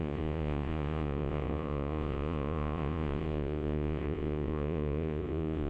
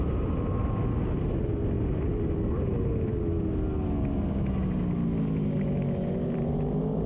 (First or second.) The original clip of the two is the second